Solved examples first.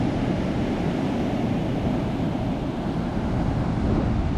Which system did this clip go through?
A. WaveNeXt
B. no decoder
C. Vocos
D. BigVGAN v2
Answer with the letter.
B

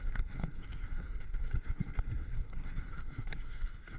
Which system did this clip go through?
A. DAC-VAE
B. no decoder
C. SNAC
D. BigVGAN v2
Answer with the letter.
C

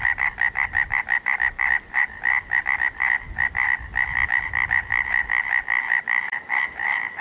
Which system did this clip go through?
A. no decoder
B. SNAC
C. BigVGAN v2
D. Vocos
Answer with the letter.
A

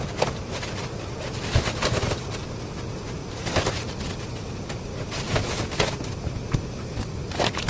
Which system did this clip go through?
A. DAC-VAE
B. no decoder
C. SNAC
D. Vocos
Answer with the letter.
B